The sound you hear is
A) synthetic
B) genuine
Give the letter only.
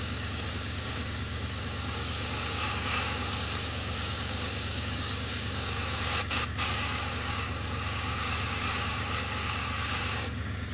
A